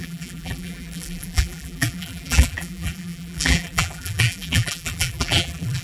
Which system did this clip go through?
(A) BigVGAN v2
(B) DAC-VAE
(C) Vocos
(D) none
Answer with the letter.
A